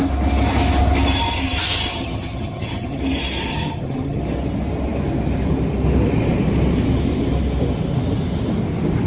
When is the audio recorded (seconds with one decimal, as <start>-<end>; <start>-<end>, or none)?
0.0-1.9; 3.0-3.5; 4.2-9.1